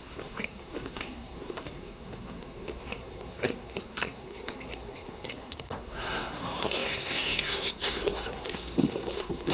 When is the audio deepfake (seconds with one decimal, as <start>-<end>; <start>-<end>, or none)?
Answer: 0.0-9.5